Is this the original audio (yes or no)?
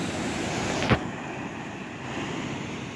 yes